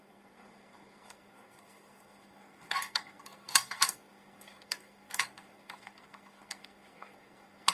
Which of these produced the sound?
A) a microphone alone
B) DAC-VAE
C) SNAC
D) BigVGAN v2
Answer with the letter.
C